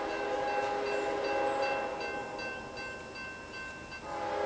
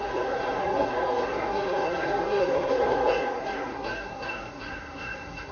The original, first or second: first